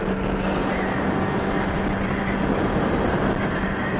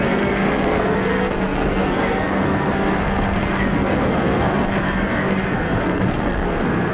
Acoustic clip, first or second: first